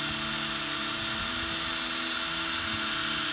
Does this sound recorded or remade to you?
recorded